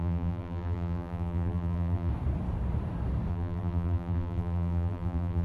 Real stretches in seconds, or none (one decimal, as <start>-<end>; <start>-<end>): 2.1-3.3